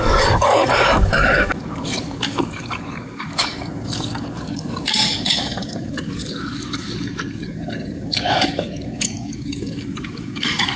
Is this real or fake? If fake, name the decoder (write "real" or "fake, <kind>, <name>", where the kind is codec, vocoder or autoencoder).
fake, codec, DAC